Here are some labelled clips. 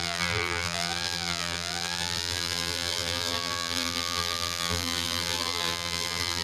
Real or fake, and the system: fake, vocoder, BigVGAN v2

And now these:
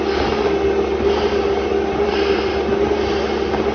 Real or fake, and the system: real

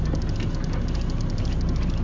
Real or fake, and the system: real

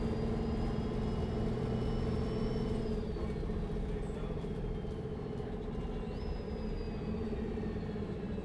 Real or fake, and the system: real